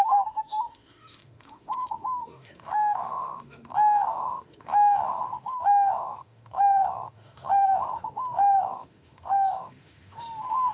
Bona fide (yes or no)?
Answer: no